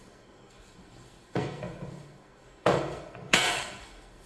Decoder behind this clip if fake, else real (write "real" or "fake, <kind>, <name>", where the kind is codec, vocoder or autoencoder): fake, codec, SNAC